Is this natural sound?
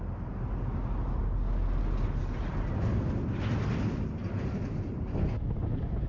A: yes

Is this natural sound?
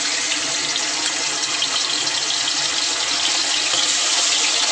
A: yes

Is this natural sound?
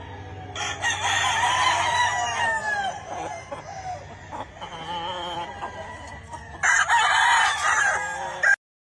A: yes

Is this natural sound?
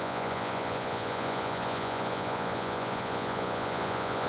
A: no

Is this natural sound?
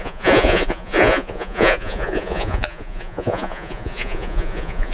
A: no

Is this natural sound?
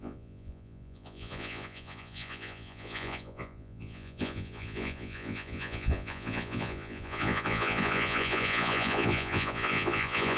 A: no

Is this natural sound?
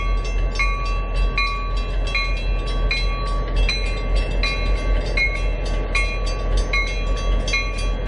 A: yes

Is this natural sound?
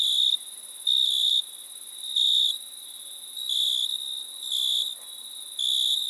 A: yes